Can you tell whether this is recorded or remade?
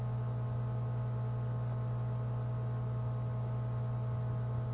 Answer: recorded